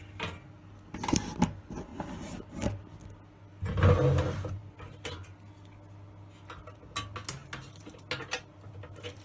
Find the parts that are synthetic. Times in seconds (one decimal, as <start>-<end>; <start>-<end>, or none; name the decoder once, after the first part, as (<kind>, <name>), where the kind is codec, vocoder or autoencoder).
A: none